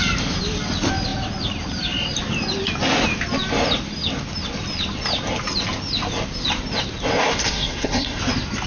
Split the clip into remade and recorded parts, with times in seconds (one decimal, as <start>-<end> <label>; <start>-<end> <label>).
0.0-7.4 recorded; 7.4-8.2 remade; 8.2-8.7 recorded